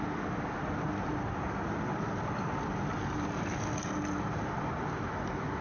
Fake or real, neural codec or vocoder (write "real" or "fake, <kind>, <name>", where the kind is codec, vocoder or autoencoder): fake, vocoder, BigVGAN v2